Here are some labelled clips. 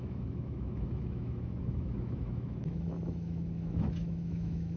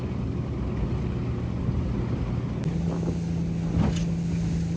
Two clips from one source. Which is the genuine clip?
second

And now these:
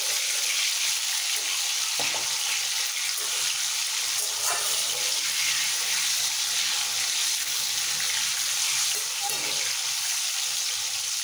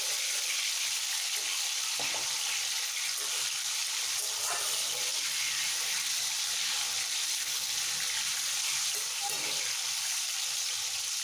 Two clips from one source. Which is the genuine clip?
first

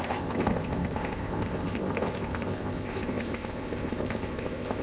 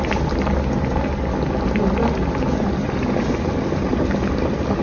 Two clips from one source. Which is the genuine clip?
second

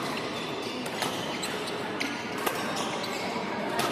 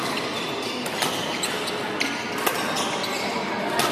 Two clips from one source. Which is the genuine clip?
second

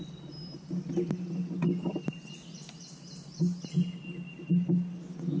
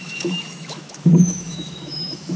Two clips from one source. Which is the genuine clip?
first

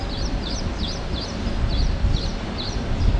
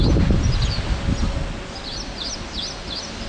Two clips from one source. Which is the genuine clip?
second